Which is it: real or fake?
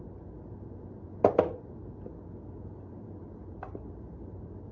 real